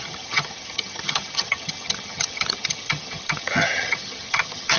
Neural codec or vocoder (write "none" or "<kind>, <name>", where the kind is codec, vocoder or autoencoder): vocoder, HiFi-GAN